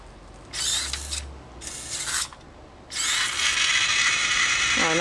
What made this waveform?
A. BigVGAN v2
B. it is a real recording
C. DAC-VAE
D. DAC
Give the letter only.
B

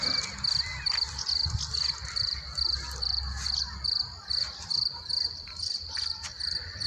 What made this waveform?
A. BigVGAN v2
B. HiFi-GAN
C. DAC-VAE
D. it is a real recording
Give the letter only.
D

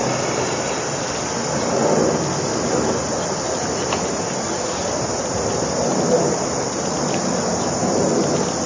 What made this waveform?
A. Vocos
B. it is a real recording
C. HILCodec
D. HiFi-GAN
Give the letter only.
B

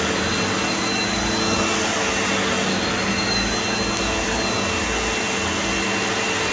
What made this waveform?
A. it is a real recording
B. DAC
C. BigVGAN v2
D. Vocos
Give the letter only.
A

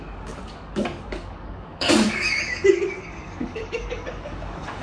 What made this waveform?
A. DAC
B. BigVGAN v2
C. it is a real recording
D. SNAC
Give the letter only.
A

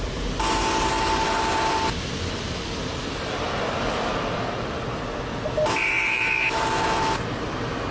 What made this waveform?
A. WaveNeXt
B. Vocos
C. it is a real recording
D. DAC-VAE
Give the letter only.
C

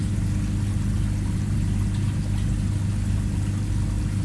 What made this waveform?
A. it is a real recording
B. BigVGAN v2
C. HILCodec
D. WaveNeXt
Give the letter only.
A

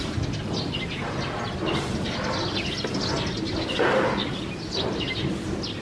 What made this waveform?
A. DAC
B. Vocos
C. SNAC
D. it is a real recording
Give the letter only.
D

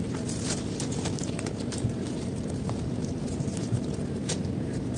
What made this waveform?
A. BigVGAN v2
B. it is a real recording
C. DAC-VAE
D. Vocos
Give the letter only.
A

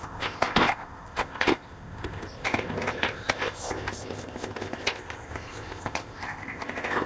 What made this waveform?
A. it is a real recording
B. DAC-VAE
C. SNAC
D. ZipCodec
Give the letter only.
D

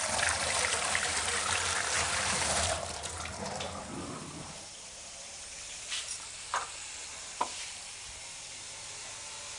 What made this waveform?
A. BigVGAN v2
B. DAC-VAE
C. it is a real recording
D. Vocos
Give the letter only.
A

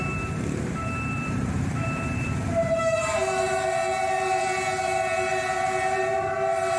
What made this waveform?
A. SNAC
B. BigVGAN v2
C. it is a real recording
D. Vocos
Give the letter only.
B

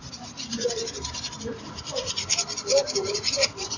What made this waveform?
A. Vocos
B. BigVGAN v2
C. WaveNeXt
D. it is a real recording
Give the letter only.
D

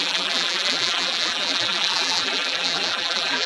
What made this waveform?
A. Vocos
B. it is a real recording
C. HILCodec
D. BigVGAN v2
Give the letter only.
D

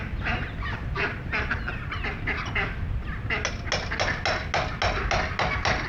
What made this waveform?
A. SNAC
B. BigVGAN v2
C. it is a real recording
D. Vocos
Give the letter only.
C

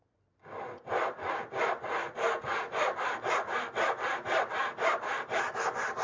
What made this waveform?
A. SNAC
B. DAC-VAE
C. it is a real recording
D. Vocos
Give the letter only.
C